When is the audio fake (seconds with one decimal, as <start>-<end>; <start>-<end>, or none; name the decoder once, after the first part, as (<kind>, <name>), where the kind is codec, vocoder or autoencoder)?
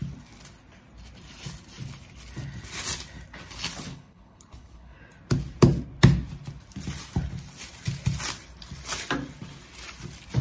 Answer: 3.9-5.0 (codec, HILCodec)